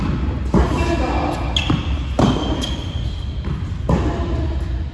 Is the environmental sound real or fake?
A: real